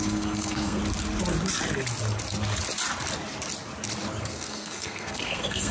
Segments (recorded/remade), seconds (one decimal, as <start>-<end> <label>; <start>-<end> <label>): 0.0-0.8 remade; 0.8-4.2 recorded; 4.2-5.7 remade